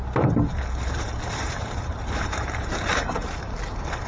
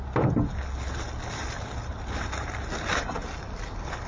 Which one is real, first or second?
second